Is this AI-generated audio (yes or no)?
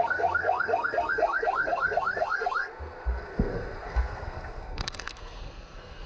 yes